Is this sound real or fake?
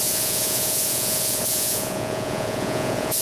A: fake